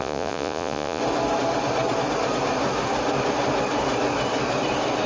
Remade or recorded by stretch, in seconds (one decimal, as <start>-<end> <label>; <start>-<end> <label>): 0.0-1.0 remade; 1.0-5.1 recorded